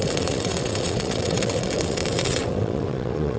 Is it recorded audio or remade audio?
remade